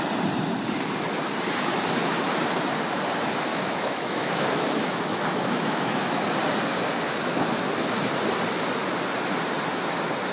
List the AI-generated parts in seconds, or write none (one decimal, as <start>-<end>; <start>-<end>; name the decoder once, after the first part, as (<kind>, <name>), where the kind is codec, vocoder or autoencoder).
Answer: 3.5-6.2 (autoencoder, DAC-VAE)